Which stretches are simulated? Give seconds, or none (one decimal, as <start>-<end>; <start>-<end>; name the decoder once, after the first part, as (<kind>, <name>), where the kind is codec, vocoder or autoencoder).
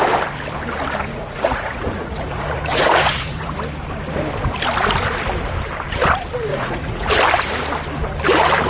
1.1-3.5 (vocoder, Vocos); 6.5-7.1